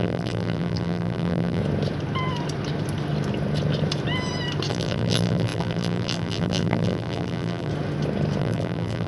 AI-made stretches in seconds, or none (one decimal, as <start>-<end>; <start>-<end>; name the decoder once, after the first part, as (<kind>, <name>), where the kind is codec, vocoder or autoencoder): 0.0-1.6 (vocoder, BigVGAN v2); 4.7-7.7; 8.4-9.1